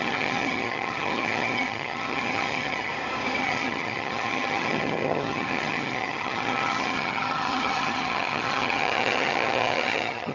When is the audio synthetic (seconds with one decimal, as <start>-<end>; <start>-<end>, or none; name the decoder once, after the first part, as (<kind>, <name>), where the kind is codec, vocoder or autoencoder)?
0.0-2.9 (vocoder, HiFi-GAN); 3.4-10.3

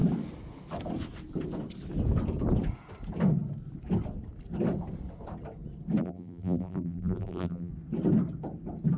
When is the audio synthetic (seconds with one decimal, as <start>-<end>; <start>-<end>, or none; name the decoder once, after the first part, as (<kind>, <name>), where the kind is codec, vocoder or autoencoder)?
6.0-7.7 (vocoder, BigVGAN v2)

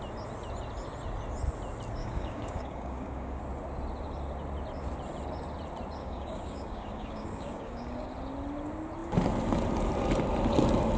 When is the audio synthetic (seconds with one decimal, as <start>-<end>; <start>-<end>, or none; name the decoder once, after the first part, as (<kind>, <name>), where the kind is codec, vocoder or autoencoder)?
2.0-3.4 (codec, DAC); 6.0-8.1

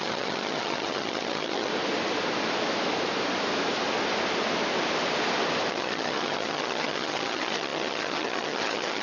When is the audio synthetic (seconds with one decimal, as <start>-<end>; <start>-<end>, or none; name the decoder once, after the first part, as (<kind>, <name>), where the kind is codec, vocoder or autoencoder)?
0.0-1.7 (vocoder, HiFi-GAN); 5.7-9.0

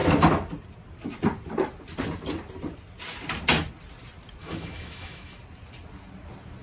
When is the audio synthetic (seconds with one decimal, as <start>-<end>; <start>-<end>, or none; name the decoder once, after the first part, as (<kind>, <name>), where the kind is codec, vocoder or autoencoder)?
4.4-5.4 (autoencoder, DAC-VAE)